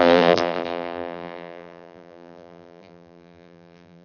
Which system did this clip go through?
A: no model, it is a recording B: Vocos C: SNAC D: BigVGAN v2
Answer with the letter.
D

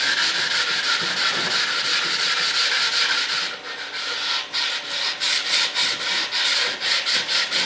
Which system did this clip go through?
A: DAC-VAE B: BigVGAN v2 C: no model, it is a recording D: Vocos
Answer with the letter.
C